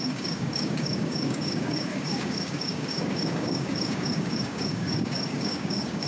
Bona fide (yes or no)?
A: no